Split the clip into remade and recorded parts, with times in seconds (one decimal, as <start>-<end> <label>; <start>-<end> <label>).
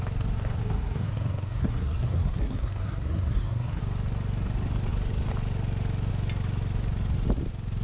0.0-0.6 recorded; 0.6-3.8 remade; 3.8-7.8 recorded